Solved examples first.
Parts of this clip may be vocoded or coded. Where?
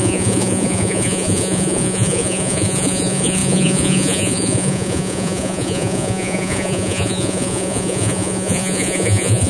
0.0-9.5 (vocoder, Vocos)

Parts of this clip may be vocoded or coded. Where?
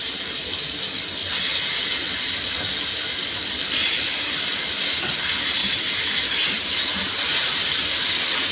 5.6-7.9 (vocoder, BigVGAN v2)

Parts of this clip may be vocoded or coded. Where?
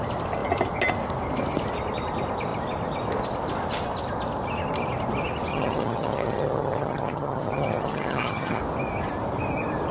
5.5-8.6 (vocoder, HiFi-GAN)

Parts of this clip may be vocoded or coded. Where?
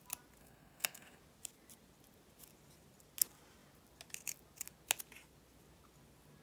0.4-1.2 (codec, SNAC)